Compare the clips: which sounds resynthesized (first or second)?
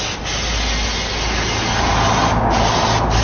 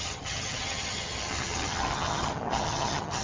second